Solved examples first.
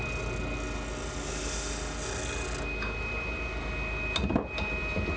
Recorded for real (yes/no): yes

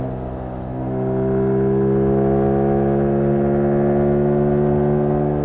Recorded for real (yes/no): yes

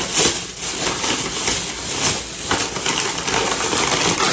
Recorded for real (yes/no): yes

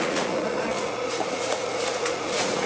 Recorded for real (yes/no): no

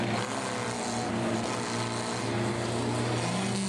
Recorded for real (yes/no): yes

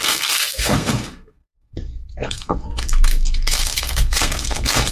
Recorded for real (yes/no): no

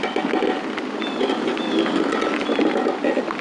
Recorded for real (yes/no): yes